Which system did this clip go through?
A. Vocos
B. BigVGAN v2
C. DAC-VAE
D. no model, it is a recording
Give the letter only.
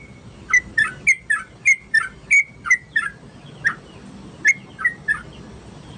D